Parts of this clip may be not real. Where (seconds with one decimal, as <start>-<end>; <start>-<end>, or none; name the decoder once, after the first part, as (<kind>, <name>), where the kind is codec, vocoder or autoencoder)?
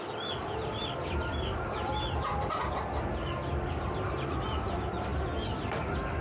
none